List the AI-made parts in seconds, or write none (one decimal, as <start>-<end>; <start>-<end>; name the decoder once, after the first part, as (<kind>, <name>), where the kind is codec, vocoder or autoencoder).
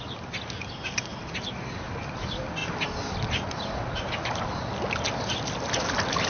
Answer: none